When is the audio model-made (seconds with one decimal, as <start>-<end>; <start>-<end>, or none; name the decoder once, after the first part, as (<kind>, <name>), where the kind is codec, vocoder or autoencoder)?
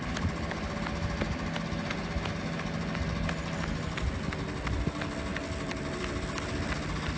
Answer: 5.3-6.3 (vocoder, BigVGAN v2)